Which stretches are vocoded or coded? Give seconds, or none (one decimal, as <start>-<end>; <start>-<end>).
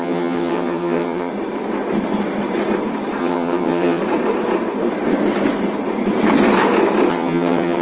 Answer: 0.0-1.3; 3.2-4.0; 7.1-7.8